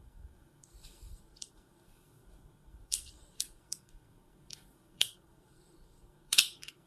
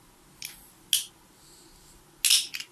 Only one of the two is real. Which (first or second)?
second